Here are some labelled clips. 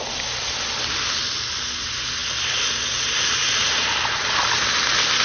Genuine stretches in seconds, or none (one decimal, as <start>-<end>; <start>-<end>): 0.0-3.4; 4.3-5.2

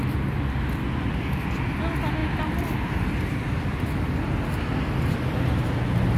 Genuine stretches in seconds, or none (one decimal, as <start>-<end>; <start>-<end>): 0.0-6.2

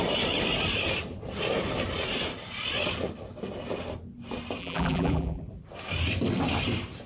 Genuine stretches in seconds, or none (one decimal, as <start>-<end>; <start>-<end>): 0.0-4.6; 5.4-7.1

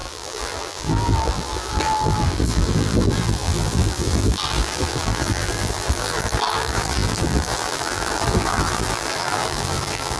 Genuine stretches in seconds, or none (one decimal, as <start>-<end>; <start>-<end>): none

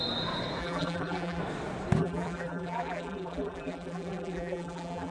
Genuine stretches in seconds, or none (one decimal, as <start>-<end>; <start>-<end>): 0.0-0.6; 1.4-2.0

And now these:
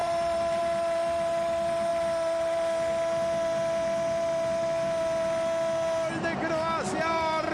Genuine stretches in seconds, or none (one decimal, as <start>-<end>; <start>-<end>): 0.6-7.5

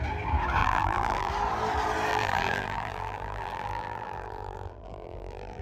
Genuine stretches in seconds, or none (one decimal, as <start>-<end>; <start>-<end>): 0.0-0.6; 1.3-2.1